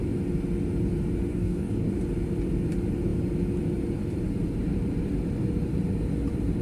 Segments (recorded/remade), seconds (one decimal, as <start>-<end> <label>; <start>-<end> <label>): 0.0-1.3 recorded; 1.3-1.9 remade; 1.9-6.6 recorded